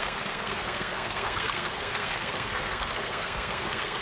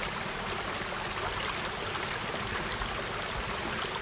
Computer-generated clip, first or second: first